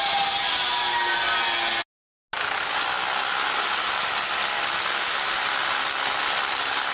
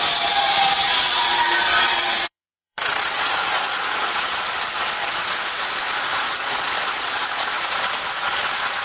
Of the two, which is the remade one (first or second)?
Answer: second